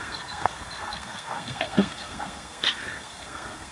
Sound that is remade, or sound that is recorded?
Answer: remade